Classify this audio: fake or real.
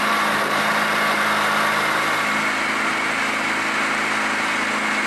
real